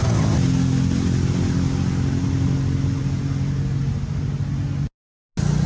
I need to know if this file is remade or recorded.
recorded